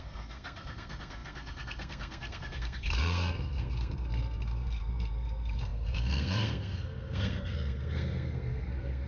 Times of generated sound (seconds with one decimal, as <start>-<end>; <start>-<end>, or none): 0.0-9.1

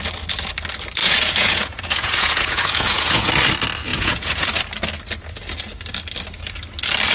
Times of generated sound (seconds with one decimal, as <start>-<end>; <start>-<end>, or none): 1.0-3.3; 3.9-4.5

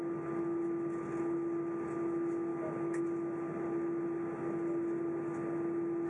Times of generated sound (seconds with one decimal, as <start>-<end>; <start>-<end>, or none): 2.5-3.0

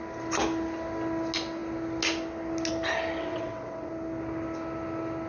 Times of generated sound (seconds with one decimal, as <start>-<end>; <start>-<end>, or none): 3.2-3.9

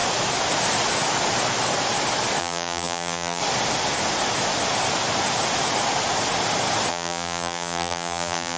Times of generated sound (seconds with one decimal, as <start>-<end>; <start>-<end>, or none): 2.4-3.4; 6.9-8.6

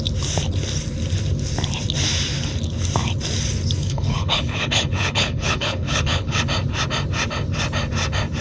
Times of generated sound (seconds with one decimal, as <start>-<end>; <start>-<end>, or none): 3.8-6.4

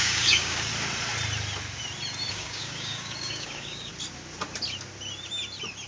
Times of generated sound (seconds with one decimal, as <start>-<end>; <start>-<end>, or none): 0.0-0.7; 2.3-3.9

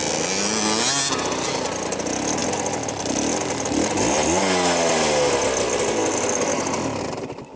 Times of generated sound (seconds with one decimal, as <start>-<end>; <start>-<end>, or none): none